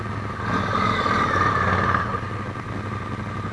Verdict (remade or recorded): recorded